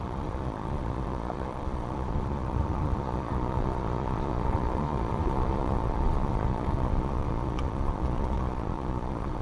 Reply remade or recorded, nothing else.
remade